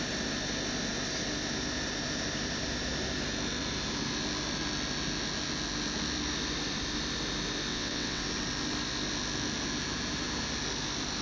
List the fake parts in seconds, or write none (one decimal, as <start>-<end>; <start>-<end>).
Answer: 7.7-8.2